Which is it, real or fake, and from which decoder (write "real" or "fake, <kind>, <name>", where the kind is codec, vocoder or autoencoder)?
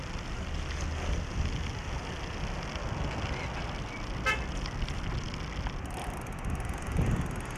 real